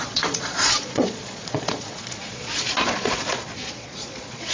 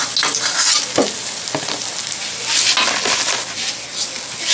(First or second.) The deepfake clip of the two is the first